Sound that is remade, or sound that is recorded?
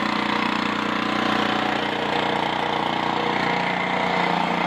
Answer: recorded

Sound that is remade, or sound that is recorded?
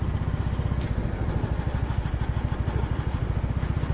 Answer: recorded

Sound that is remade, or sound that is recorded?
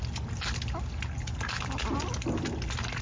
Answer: recorded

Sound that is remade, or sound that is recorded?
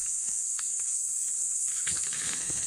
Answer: remade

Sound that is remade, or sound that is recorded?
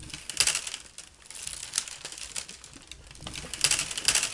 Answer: recorded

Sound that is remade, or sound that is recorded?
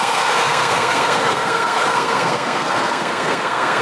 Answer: remade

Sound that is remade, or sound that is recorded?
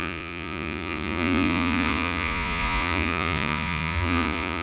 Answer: remade